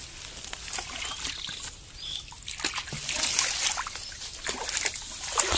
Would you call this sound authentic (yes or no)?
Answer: yes